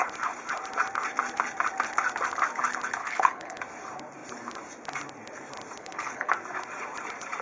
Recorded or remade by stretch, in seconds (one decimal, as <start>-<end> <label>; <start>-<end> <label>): 0.0-3.0 recorded; 3.0-3.6 remade; 3.6-5.8 recorded; 5.8-6.3 remade; 6.3-7.4 recorded